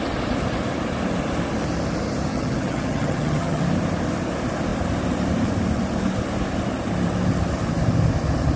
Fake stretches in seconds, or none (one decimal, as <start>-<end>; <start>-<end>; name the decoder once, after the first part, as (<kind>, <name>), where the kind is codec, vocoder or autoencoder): 2.3-3.6 (vocoder, HiFi-GAN)